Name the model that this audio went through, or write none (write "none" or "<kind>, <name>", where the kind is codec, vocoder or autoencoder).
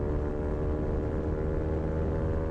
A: none